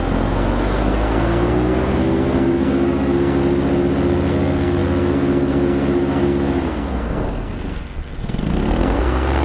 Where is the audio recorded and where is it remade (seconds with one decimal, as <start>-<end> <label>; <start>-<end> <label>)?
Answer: 0.0-3.4 remade; 3.4-4.3 recorded; 4.3-9.4 remade